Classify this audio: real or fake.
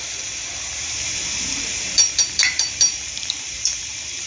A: fake